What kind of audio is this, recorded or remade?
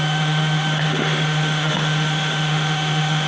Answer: remade